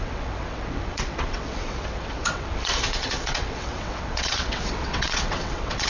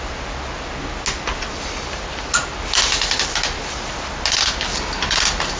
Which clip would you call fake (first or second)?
first